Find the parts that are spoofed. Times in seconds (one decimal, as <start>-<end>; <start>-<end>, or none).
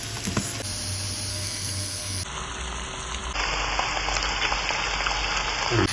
1.3-2.2